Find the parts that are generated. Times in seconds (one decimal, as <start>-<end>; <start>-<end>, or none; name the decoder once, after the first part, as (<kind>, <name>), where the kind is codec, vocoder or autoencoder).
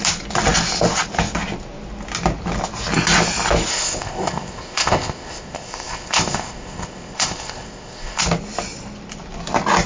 3.7-8.2 (codec, ZipCodec)